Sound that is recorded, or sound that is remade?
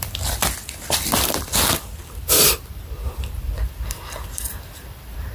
remade